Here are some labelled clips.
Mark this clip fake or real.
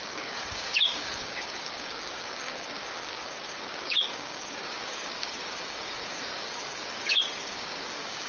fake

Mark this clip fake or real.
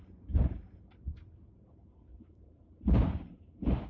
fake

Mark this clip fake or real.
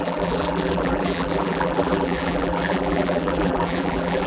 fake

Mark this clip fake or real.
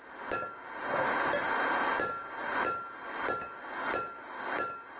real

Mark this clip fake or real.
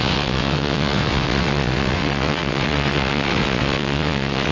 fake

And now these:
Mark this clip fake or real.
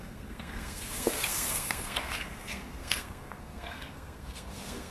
fake